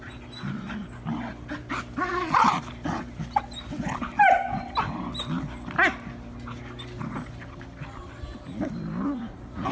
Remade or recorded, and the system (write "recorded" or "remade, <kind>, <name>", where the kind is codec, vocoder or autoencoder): recorded